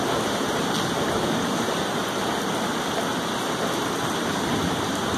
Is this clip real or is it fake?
real